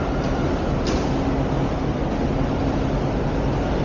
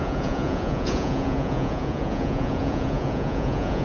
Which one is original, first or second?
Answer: first